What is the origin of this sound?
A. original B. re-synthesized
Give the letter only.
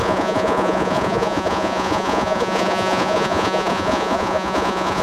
B